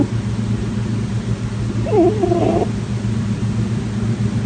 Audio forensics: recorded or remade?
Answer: recorded